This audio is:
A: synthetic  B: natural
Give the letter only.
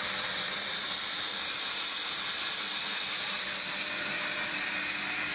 B